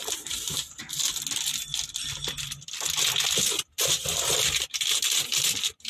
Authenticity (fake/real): real